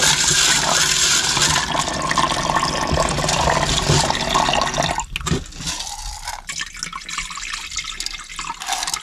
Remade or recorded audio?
recorded